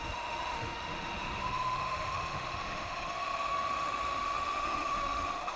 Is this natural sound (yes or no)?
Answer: no